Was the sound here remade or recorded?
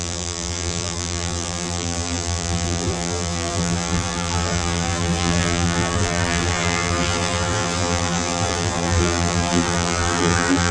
remade